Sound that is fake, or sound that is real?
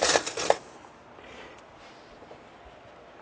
real